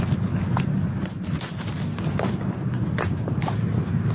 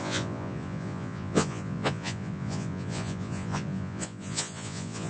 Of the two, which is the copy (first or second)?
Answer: second